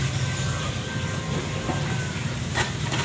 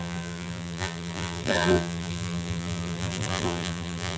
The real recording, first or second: first